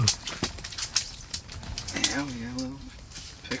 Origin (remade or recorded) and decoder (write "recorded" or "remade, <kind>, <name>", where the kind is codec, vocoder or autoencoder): recorded